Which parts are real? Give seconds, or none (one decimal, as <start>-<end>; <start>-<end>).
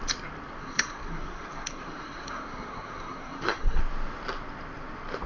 0.0-0.6; 3.8-5.3